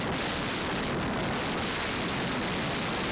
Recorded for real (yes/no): yes